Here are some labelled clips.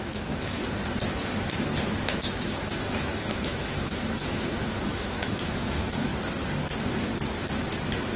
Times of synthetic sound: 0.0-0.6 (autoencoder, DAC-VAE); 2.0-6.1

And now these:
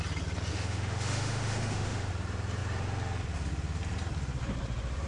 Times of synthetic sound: 0.5-2.1 (autoencoder, DAC-VAE)

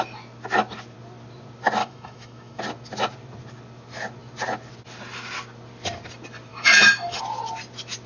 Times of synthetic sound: 1.8-2.6 (autoencoder, DAC-VAE); 6.5-7.2

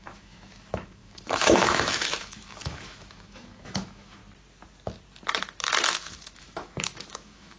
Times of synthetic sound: 0.0-4.2 (autoencoder, DAC-VAE); 5.9-7.6

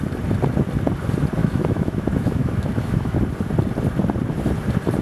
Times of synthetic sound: 1.4-3.2 (autoencoder, DAC-VAE)